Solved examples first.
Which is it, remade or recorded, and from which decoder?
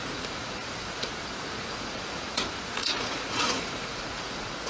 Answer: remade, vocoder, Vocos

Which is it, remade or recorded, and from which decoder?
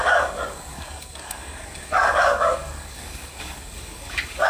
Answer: remade, codec, DAC